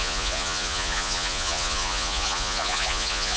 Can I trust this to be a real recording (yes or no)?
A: no